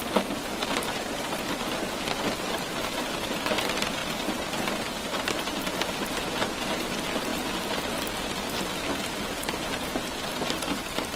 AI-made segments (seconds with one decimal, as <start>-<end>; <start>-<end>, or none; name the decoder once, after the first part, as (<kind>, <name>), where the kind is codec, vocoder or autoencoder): none